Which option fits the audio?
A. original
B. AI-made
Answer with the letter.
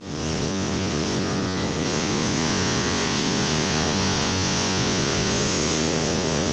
B